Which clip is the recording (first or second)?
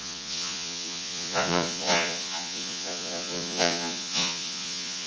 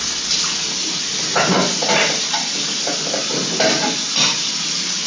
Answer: second